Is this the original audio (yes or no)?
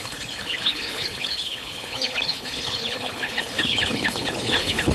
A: no